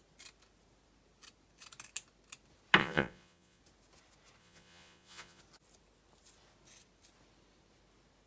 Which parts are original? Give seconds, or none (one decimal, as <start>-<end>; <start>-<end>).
0.0-2.8; 3.6-4.4; 5.4-8.3

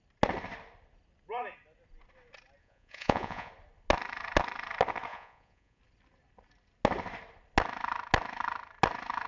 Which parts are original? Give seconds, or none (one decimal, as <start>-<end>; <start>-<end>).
0.0-2.6; 3.5-5.1; 5.8-9.3

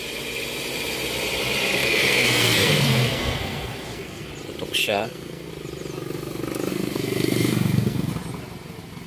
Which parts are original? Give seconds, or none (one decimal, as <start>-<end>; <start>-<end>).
0.0-1.8; 4.3-4.8; 5.5-6.7; 8.1-9.1

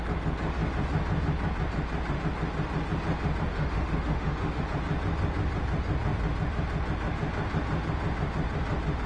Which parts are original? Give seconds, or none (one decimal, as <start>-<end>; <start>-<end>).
0.0-3.5; 4.6-9.1

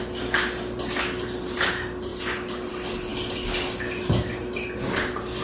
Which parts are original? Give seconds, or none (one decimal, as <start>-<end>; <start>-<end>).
0.0-5.4

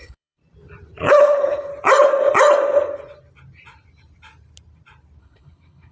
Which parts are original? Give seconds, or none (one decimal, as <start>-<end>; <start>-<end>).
0.4-1.1; 1.7-5.2

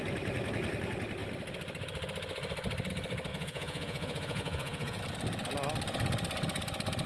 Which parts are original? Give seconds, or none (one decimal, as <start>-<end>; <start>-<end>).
0.0-3.3; 5.0-7.1

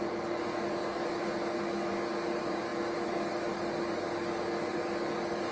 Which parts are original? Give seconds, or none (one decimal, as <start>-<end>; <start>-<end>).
0.0-5.5